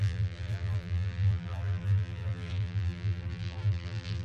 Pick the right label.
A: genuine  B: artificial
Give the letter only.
B